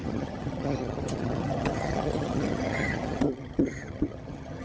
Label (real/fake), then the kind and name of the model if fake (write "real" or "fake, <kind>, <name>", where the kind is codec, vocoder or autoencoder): fake, vocoder, HiFi-GAN